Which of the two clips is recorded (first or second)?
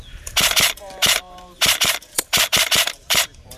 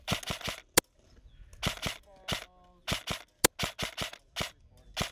second